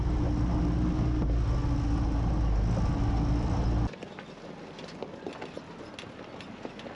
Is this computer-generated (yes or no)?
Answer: no